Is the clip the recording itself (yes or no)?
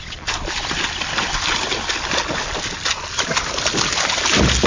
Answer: yes